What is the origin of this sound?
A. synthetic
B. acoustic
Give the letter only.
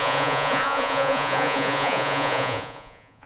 A